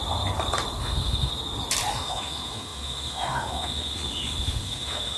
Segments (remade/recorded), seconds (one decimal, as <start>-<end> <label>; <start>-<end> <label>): 0.0-0.8 recorded; 0.8-1.3 remade; 1.3-1.9 recorded; 1.9-5.2 remade